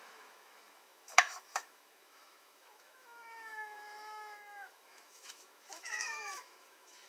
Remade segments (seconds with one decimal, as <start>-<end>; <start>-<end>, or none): 0.0-7.1